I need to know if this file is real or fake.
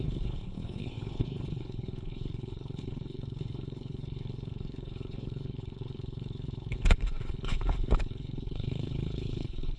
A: fake